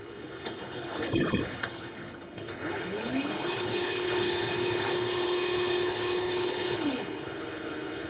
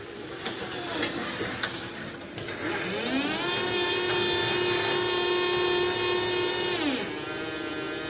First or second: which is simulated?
first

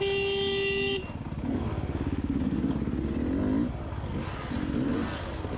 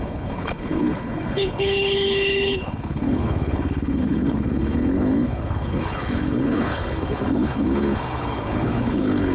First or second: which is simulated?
second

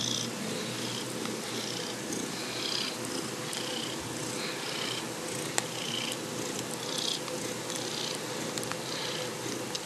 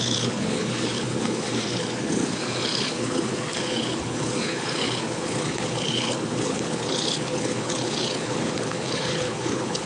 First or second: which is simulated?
second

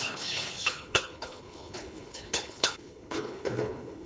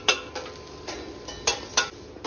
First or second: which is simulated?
first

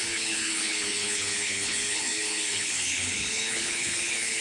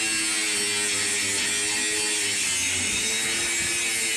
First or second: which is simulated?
first